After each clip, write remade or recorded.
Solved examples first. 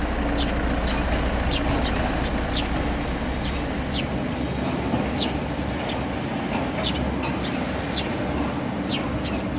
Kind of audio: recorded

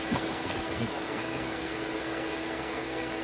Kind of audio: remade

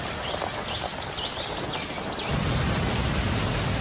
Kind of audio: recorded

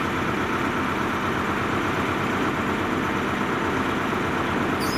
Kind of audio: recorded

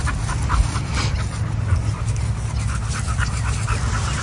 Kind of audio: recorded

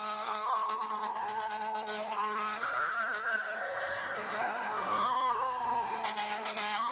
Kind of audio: remade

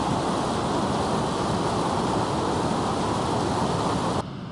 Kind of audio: recorded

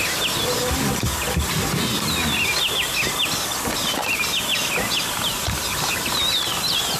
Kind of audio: recorded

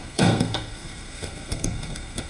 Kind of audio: remade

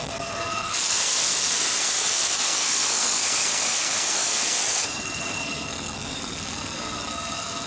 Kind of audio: remade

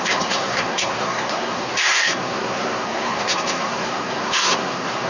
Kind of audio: remade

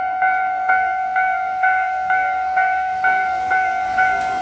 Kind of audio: remade